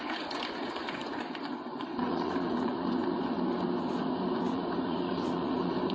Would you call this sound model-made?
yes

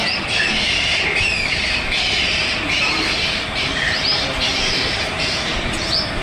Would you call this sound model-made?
yes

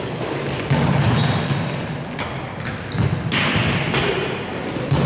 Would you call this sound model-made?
no